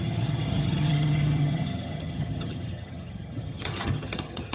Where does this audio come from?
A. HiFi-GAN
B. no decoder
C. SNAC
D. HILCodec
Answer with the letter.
A